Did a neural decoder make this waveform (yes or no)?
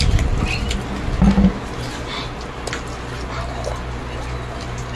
no